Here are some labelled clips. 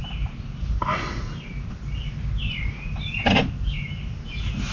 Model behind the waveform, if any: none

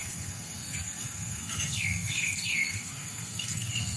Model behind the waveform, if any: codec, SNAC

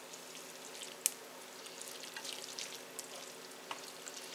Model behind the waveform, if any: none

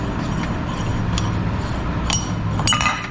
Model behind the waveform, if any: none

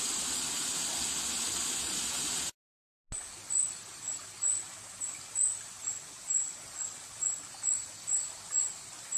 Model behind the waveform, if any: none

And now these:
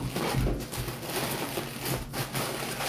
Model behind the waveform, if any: none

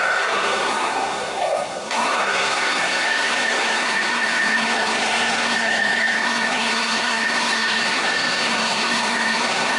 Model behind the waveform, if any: codec, SNAC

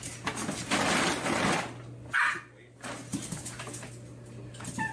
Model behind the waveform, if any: none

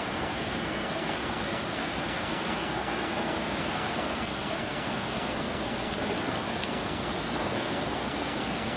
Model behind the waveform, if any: codec, SNAC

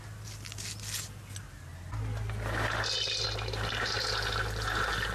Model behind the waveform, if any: none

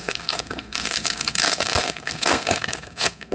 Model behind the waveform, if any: codec, SNAC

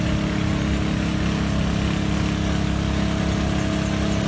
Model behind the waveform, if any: none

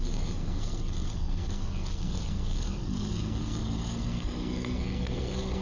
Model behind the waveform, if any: codec, SNAC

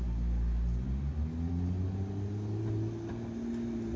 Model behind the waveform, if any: none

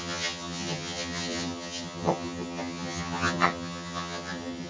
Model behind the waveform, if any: vocoder, HiFi-GAN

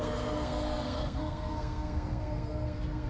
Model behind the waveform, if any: codec, SNAC